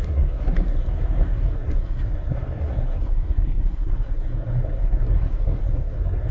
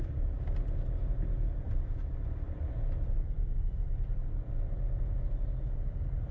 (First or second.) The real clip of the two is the second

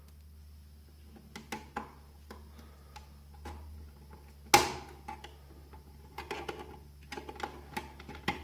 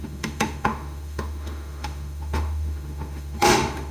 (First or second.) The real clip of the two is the first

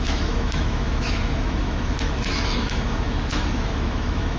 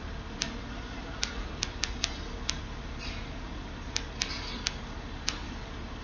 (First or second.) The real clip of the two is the second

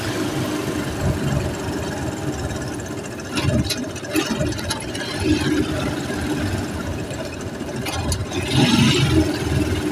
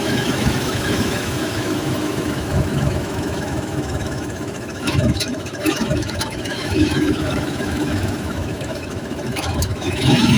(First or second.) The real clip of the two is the first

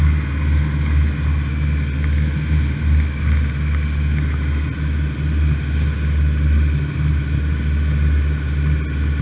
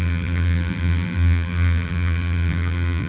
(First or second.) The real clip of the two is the first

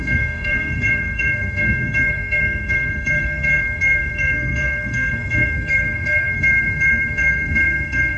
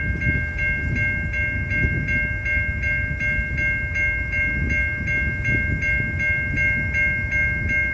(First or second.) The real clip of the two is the second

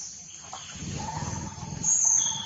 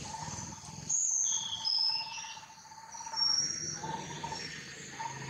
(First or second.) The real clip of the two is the second